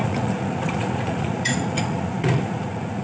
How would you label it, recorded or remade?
remade